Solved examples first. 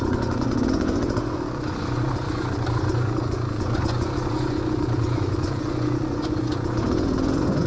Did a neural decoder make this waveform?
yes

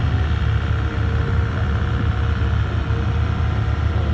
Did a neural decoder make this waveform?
no